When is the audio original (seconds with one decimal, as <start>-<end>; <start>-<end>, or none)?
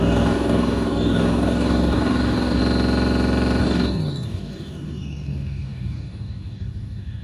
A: 2.6-3.6